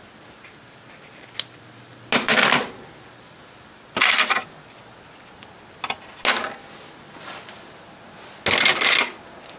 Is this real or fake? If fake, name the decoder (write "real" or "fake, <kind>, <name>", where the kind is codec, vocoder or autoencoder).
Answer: real